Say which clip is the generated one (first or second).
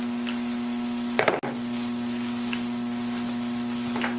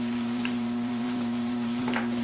second